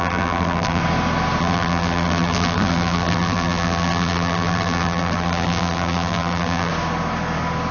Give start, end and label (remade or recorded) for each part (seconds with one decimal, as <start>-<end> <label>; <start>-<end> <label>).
0.0-0.8 remade; 0.8-1.4 recorded; 1.4-6.7 remade; 6.7-7.7 recorded